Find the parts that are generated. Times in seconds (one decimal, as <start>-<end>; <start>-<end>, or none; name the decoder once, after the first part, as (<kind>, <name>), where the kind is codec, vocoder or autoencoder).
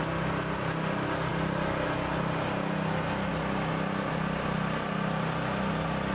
none